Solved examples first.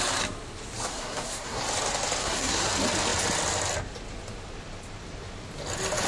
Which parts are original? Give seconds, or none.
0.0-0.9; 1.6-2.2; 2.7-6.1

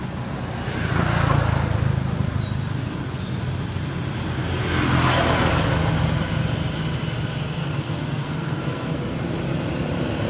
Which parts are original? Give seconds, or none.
0.0-7.6; 9.2-10.3

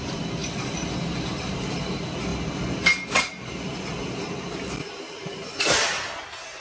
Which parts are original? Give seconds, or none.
0.0-6.6

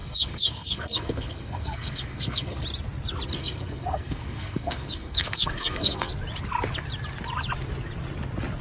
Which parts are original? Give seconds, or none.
2.6-3.4; 6.1-8.6

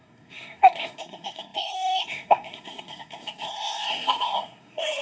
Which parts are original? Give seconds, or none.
none

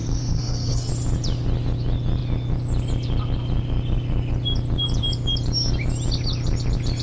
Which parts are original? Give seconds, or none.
0.9-7.0

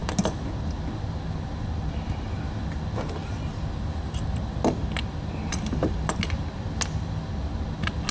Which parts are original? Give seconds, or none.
0.0-8.1